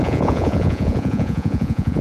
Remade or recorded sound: remade